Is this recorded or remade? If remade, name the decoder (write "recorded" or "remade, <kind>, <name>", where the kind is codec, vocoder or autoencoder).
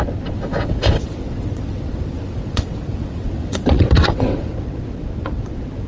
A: remade, vocoder, WaveNeXt